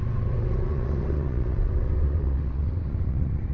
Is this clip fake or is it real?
fake